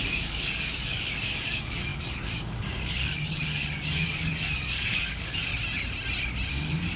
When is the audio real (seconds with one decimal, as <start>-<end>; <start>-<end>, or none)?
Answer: 5.5-6.5